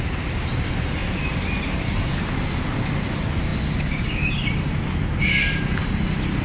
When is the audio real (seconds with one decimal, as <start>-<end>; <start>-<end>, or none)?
0.0-6.4

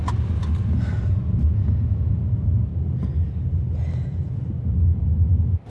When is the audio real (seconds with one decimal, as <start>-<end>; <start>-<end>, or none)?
0.0-1.1; 2.7-5.7

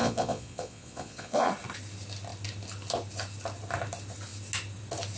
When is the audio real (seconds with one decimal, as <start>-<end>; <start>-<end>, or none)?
1.5-5.2